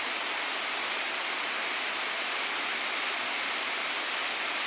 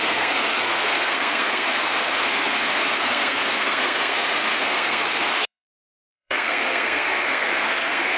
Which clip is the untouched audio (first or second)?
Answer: first